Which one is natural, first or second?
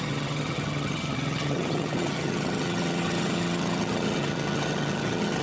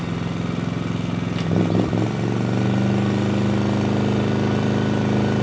second